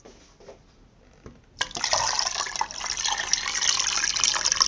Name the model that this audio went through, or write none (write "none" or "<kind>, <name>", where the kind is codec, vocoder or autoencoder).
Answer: none